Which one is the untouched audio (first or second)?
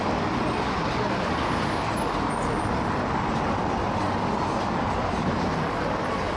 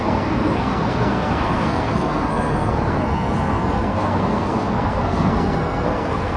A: first